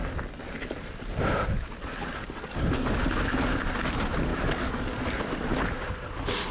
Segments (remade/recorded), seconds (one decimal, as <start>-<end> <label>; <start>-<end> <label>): 0.0-2.2 recorded; 2.2-3.1 remade; 3.1-4.3 recorded; 4.3-5.3 remade; 5.3-6.5 recorded